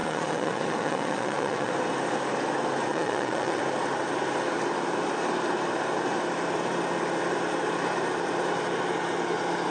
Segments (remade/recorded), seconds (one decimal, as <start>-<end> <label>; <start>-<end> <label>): 0.0-1.7 remade; 1.7-2.9 recorded; 2.9-3.6 remade; 3.6-9.7 recorded